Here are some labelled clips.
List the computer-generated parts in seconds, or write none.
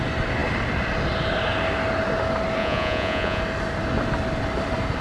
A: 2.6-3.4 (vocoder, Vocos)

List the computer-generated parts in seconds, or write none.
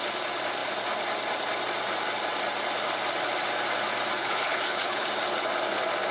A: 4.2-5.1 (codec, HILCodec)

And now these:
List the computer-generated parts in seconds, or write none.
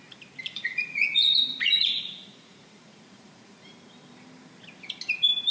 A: 0.4-3.7 (vocoder, Vocos)